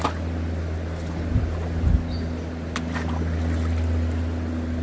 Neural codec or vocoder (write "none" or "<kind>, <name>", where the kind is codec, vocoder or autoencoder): none